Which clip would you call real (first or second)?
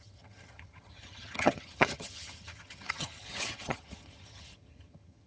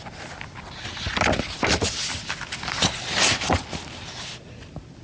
second